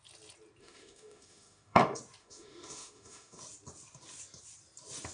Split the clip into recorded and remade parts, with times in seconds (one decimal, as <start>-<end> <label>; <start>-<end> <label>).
0.0-0.6 recorded; 0.6-1.8 remade; 1.8-2.2 recorded; 2.2-3.4 remade; 3.4-5.1 recorded